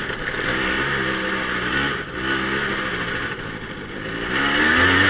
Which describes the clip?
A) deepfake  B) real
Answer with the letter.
B